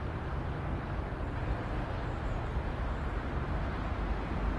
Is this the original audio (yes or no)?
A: yes